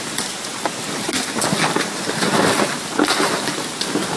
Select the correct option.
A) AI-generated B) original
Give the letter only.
B